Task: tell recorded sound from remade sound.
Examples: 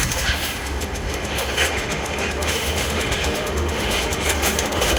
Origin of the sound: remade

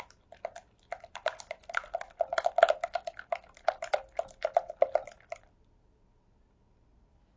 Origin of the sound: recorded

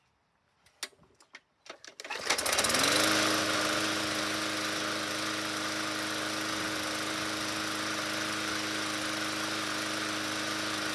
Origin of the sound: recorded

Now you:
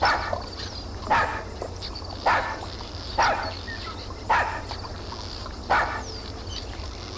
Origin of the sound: recorded